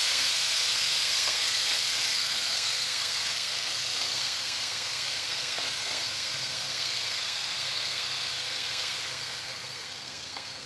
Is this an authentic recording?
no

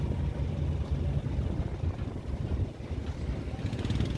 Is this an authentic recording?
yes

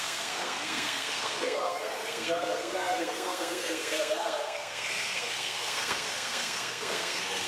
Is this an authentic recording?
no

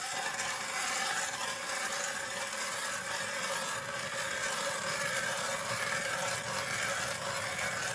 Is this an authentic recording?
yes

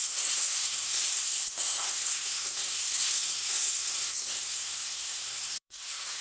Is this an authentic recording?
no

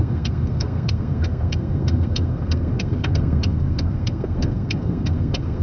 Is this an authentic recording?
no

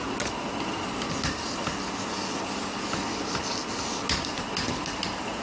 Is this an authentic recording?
yes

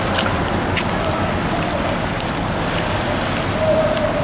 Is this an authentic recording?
yes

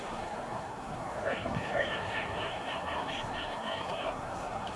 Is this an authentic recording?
no